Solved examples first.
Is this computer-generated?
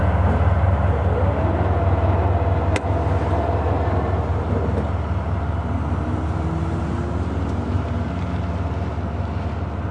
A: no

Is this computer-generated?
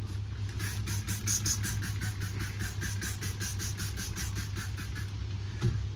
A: no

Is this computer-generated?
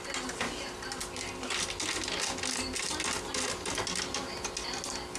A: no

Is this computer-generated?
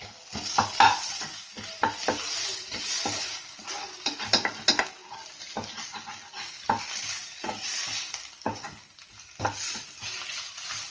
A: no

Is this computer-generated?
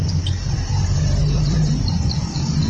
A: yes